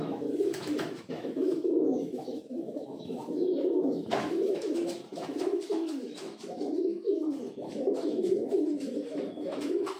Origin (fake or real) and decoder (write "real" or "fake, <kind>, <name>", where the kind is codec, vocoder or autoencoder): fake, autoencoder, DAC-VAE